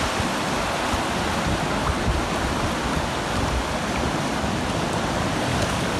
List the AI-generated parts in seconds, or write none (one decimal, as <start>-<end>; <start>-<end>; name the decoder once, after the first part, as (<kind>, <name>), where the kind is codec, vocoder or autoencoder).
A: 5.5-6.0 (codec, DAC)